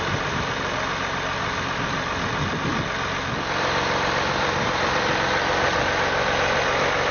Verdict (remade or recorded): recorded